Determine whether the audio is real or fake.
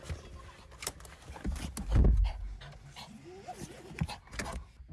real